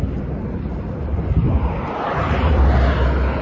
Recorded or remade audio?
recorded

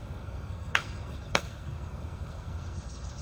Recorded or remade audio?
remade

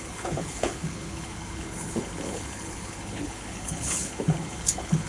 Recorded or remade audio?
remade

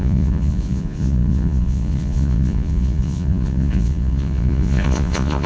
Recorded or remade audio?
remade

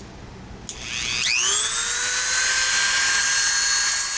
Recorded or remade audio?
recorded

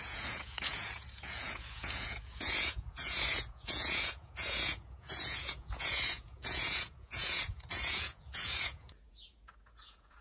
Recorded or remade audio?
remade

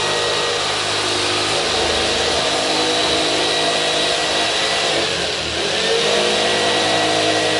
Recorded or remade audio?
recorded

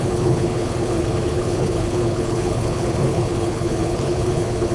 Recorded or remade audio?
remade